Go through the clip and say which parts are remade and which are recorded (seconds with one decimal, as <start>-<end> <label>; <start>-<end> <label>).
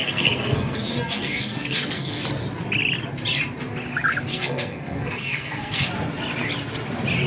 0.0-2.2 remade; 2.2-4.3 recorded; 4.3-5.9 remade; 5.9-7.3 recorded